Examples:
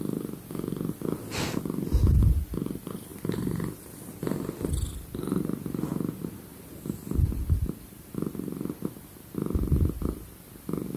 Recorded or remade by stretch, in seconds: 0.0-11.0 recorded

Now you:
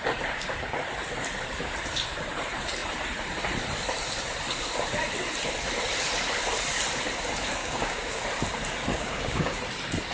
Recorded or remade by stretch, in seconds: 0.0-7.6 recorded; 7.6-8.2 remade; 8.2-8.9 recorded; 8.9-9.6 remade; 9.6-10.1 recorded